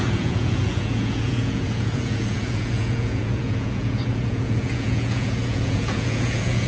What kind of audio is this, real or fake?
fake